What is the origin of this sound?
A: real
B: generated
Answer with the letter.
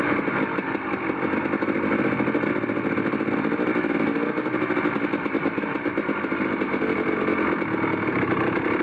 A